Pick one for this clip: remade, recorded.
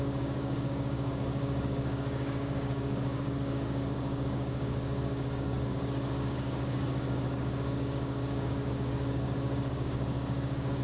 remade